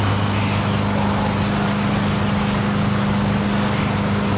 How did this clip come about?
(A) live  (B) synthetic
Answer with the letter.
A